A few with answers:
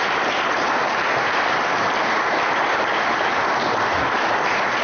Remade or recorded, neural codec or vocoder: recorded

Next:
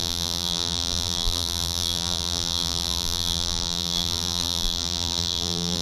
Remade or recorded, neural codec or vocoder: remade, vocoder, BigVGAN v2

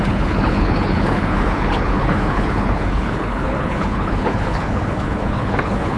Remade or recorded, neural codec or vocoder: remade, codec, HILCodec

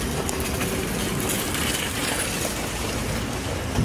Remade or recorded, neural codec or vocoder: recorded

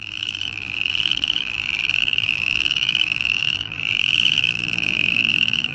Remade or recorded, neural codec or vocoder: remade, vocoder, BigVGAN v2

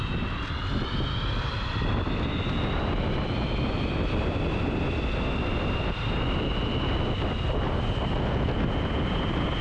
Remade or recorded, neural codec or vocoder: recorded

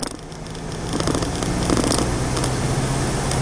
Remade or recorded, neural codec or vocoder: recorded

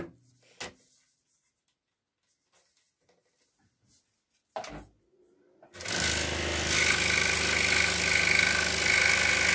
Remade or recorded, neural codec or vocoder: recorded